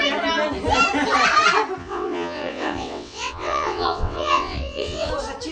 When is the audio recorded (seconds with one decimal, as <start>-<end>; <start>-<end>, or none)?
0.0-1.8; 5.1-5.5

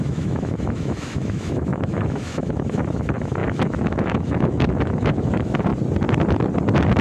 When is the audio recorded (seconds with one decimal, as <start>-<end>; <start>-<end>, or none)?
5.7-7.0

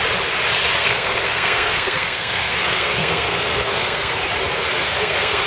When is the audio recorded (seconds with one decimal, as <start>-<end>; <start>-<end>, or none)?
0.0-0.8; 4.1-4.8

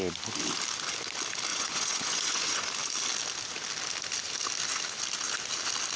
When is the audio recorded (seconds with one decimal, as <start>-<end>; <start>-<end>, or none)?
0.0-1.5; 2.6-6.0

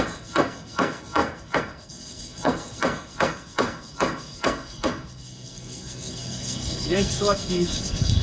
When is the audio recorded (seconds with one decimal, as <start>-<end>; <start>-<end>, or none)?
none

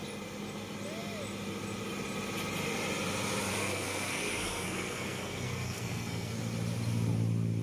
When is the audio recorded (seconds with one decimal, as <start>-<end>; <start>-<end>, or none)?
0.0-3.6; 6.4-7.6